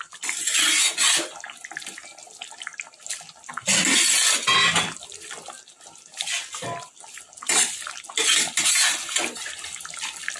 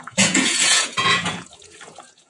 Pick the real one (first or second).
first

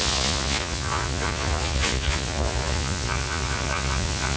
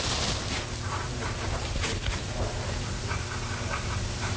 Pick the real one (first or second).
second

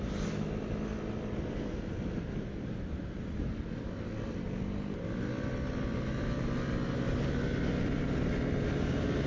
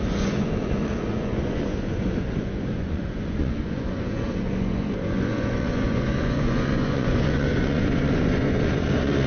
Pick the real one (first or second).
first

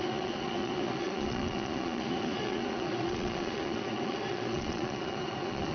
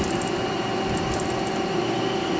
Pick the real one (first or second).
second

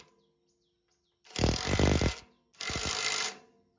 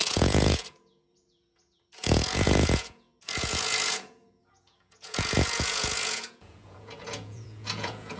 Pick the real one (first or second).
first